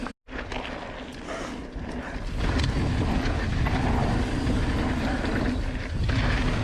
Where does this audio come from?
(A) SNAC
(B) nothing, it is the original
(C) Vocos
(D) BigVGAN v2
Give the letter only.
B